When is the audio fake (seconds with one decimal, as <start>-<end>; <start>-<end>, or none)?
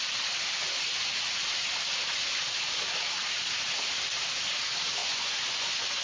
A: 5.0-6.0